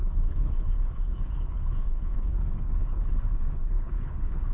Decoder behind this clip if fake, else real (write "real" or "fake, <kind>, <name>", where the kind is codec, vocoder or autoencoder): fake, codec, HILCodec